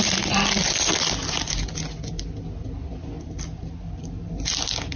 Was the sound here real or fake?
real